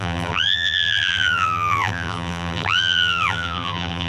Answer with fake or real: fake